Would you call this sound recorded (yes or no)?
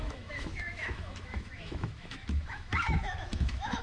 no